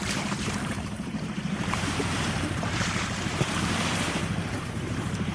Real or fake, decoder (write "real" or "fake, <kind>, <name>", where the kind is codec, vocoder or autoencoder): fake, vocoder, BigVGAN v2